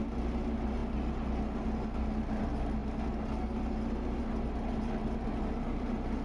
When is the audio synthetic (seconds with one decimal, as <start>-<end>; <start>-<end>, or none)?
none